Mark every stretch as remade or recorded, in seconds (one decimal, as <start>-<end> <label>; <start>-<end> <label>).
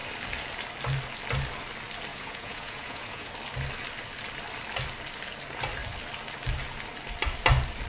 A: 0.0-2.1 recorded; 2.1-3.3 remade; 3.3-7.9 recorded